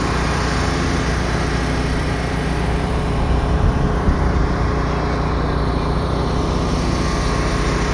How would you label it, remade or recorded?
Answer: recorded